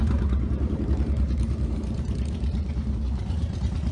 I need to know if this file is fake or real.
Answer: fake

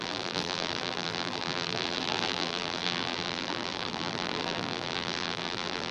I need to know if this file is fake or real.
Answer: fake